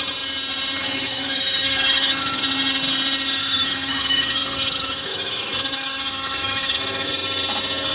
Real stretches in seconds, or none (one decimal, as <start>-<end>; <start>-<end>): 0.0-0.8; 2.4-3.4; 7.1-7.9